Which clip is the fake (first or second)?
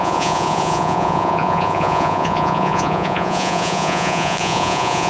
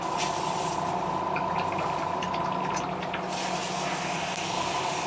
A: first